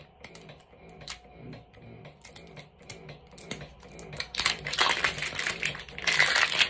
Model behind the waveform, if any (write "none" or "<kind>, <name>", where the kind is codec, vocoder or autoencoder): none